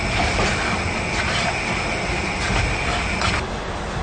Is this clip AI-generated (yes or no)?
no